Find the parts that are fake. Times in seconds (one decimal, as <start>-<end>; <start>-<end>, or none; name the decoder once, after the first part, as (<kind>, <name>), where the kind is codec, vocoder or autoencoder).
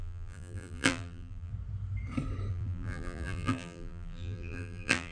0.0-1.5 (vocoder, BigVGAN v2); 2.5-5.1